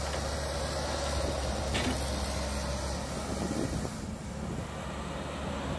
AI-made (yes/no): no